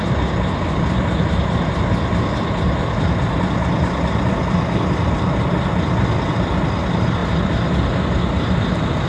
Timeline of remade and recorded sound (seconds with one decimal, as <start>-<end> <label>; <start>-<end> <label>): 0.0-9.1 recorded